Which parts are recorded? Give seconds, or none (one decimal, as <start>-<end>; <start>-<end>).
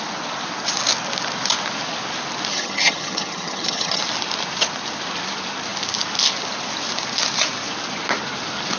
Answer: 0.0-2.5; 4.0-8.8